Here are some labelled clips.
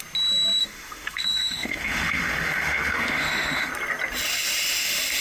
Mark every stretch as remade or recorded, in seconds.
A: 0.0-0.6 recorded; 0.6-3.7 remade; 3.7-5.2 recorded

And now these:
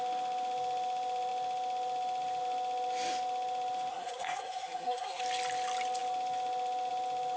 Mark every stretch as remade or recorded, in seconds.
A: 0.0-3.9 recorded; 3.9-5.2 remade; 5.2-7.4 recorded

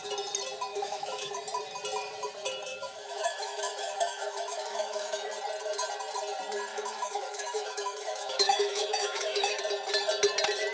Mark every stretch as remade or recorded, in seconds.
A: 0.0-0.7 recorded; 0.7-1.3 remade; 1.3-2.7 recorded; 2.7-5.3 remade; 5.3-6.7 recorded; 6.7-9.6 remade; 9.6-10.7 recorded

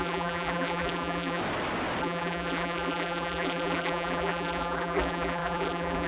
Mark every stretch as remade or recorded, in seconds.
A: 0.0-1.4 remade; 1.4-2.0 recorded; 2.0-6.1 remade

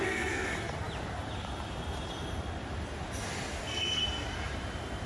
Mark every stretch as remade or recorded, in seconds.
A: 0.0-0.5 remade; 0.5-3.6 recorded; 3.6-4.0 remade; 4.0-5.1 recorded

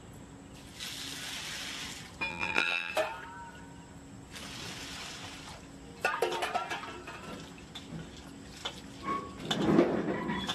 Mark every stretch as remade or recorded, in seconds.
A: 0.0-2.3 recorded; 2.3-2.9 remade; 2.9-10.5 recorded

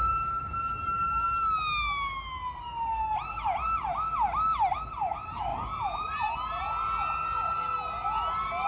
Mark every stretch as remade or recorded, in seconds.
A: 0.0-8.7 recorded

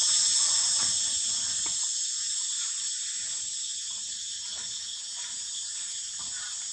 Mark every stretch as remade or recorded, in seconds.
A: 0.0-2.9 remade; 2.9-6.7 recorded